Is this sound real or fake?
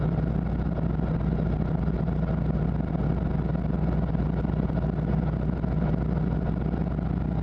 real